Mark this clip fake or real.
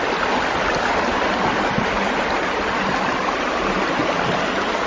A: real